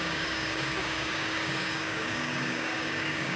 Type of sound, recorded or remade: remade